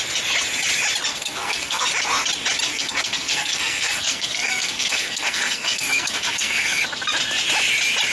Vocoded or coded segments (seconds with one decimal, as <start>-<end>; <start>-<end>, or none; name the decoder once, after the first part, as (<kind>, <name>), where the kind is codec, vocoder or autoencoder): 1.1-1.8 (codec, SNAC); 2.7-6.8